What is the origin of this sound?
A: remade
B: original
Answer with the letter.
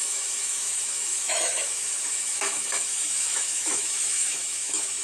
A